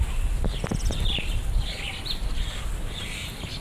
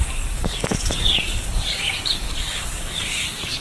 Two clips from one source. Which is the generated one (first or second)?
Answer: second